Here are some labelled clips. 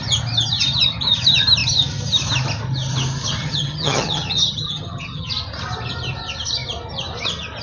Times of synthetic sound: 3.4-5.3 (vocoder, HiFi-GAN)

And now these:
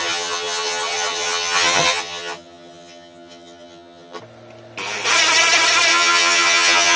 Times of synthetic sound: 0.0-4.2 (vocoder, HiFi-GAN); 5.9-7.0